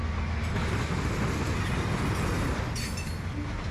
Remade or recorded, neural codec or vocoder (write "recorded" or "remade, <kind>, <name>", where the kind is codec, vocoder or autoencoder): recorded